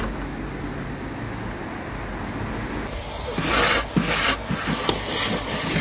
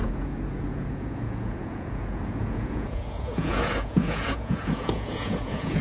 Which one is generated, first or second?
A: second